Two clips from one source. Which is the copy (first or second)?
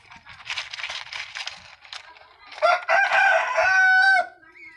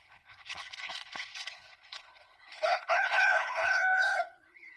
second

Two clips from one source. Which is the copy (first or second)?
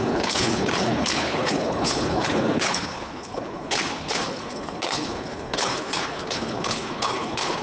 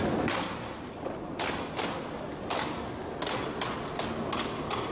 first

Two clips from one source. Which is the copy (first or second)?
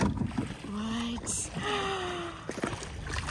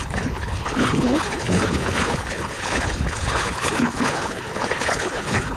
second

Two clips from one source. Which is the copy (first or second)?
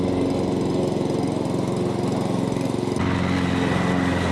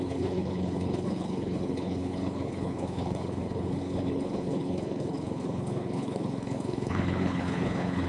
second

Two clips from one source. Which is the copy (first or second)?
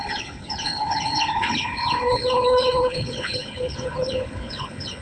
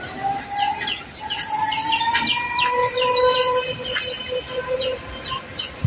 first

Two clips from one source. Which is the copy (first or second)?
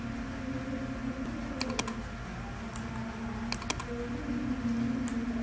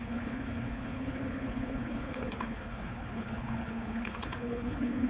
second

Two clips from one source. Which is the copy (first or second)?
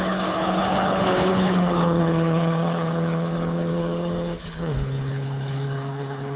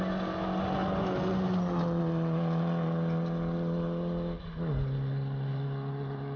first